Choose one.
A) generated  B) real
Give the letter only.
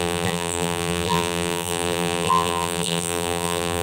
A